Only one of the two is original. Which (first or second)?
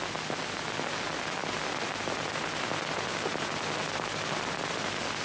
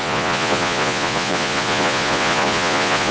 first